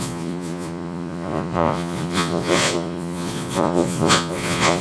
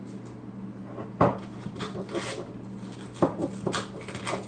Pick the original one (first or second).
second